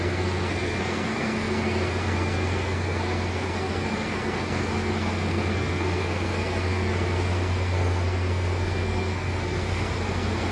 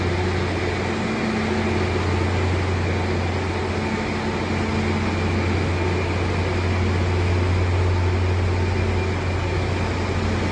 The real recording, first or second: second